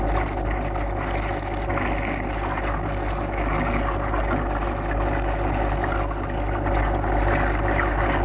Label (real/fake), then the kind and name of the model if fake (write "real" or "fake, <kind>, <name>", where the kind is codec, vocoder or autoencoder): real